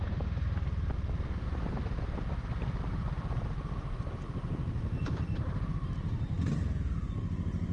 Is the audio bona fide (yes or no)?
yes